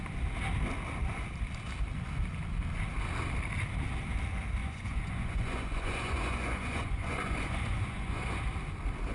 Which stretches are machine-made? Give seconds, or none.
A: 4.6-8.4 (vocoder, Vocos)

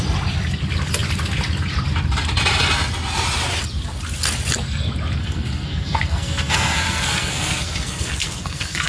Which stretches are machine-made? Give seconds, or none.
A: 5.2-8.9 (codec, SNAC)

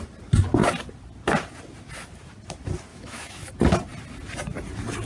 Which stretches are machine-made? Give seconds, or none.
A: 2.9-3.5 (autoencoder, DAC-VAE)

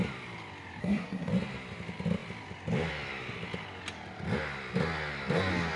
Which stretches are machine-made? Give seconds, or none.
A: 0.8-1.3 (codec, SNAC)

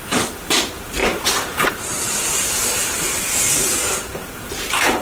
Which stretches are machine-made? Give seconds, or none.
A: 1.0-3.2 (vocoder, BigVGAN v2)

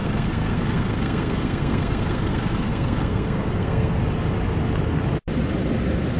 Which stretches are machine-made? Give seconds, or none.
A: 0.0-4.0 (codec, SNAC)